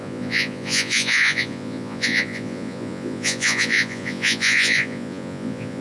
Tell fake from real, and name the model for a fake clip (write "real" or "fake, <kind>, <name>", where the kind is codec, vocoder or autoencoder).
fake, vocoder, Vocos